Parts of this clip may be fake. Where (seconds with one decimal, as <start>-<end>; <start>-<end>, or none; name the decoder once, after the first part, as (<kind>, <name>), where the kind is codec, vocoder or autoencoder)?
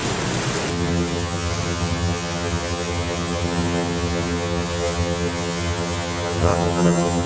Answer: 0.7-7.3 (vocoder, HiFi-GAN)